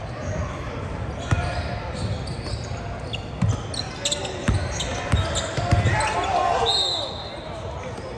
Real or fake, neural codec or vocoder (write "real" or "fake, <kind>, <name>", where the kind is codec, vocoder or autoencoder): real